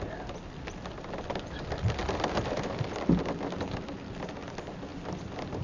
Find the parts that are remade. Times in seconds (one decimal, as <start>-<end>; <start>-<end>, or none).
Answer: 2.0-2.8